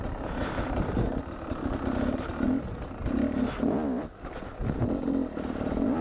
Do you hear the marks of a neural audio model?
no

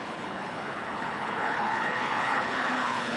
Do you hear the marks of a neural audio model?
yes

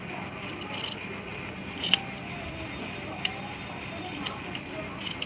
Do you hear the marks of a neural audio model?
no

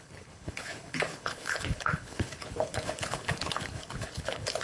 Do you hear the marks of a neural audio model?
yes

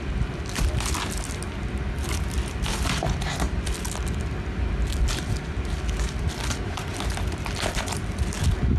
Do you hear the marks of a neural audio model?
no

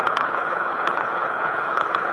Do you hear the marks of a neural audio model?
yes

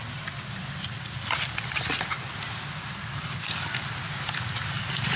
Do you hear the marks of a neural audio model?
no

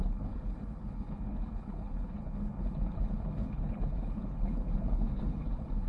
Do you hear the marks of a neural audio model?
yes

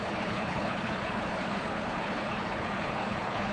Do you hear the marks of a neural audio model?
yes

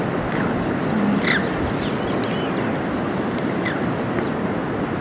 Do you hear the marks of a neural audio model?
no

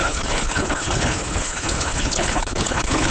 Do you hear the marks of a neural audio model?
yes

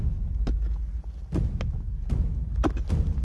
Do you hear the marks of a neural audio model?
no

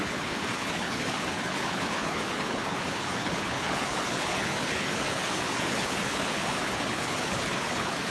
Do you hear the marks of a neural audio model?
yes